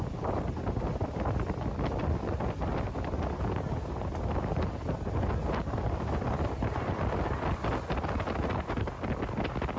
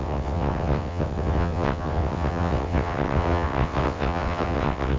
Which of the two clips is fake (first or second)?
second